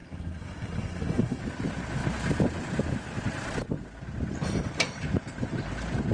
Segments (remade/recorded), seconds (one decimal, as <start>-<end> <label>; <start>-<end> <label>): 0.0-1.4 remade; 1.4-6.1 recorded